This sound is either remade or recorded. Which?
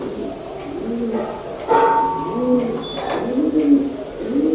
recorded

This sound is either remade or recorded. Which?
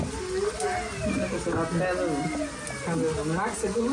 recorded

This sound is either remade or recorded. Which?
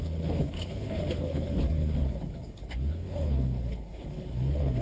remade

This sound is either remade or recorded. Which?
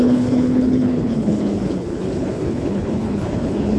remade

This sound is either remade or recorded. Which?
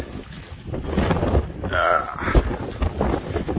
recorded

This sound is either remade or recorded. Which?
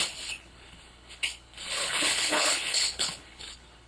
remade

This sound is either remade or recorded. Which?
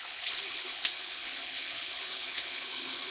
remade